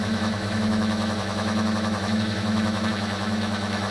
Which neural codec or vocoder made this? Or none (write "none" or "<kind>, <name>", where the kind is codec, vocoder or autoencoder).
autoencoder, DAC-VAE